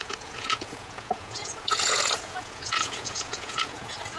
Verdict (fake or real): fake